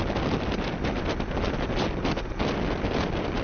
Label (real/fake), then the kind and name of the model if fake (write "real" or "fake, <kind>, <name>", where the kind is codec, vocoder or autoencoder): real